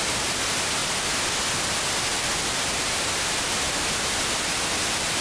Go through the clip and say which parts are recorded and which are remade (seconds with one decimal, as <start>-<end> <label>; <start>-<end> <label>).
0.0-5.2 recorded